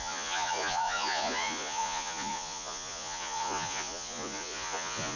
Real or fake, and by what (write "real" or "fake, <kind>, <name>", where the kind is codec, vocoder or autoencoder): fake, vocoder, Vocos